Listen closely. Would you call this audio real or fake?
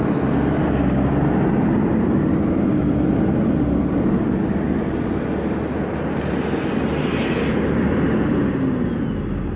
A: real